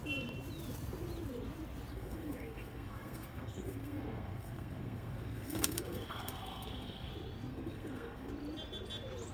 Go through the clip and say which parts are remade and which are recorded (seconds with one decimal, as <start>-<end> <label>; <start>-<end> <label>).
0.0-1.9 recorded; 1.9-7.1 remade; 7.1-7.5 recorded; 7.5-8.3 remade; 8.3-9.3 recorded